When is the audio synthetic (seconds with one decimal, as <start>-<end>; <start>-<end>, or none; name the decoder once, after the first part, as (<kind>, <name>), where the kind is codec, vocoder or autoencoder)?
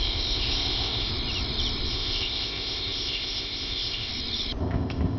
0.0-1.1 (codec, ZipCodec); 1.9-4.1; 4.6-5.2